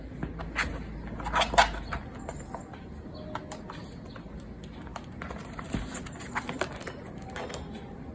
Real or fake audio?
real